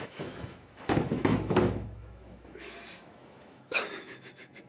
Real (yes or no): no